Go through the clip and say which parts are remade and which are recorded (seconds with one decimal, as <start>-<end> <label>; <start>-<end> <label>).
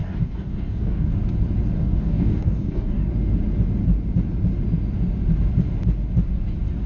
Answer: 0.0-1.1 remade; 1.1-1.8 recorded; 1.8-3.1 remade; 3.1-6.9 recorded